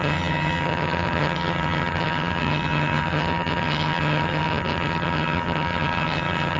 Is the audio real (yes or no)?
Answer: no